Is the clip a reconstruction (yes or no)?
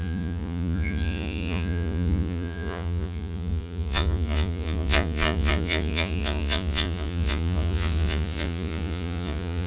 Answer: yes